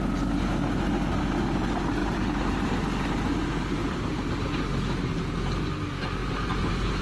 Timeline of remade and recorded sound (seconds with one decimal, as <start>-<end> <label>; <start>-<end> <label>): 0.0-2.0 recorded; 2.0-2.7 remade; 2.7-3.8 recorded; 3.8-4.5 remade; 4.5-6.2 recorded; 6.2-7.0 remade